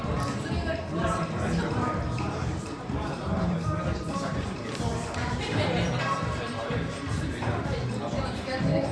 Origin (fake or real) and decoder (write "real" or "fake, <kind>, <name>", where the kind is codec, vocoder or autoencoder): fake, vocoder, BigVGAN v2